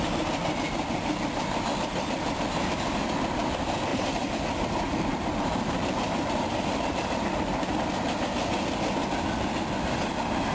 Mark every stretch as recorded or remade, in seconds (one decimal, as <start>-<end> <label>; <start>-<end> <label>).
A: 0.0-3.9 recorded; 3.9-7.7 remade; 7.7-10.5 recorded